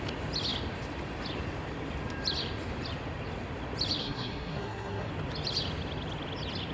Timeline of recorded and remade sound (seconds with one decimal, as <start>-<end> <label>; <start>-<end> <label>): 0.0-4.0 recorded; 4.0-5.1 remade; 5.1-6.7 recorded